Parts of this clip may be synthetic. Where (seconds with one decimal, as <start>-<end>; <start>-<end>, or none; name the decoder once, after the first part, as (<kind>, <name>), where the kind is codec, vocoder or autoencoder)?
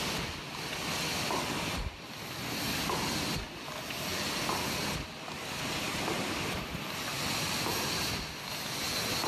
none